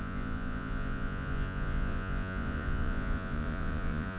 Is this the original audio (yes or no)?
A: no